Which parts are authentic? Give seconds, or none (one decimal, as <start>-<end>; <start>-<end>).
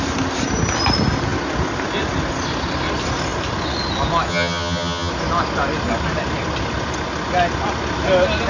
0.0-4.3; 5.1-8.5